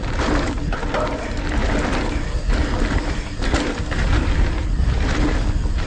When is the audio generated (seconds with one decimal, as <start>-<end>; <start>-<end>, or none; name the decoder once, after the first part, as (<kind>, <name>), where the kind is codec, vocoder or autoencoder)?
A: none